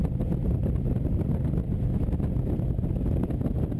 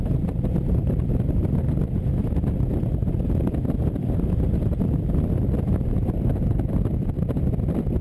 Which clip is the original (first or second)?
first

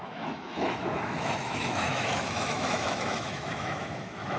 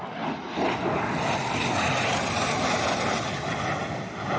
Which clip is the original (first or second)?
second